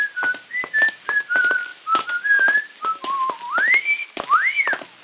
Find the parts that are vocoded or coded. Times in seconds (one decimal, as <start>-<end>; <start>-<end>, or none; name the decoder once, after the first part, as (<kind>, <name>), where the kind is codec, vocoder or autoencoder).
none